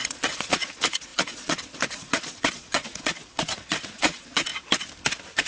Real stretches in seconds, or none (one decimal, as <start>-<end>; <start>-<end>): 4.5-5.5